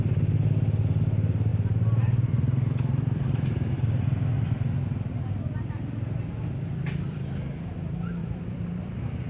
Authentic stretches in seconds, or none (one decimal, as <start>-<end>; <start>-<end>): 0.0-1.5; 4.0-8.2